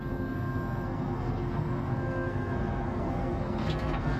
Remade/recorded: remade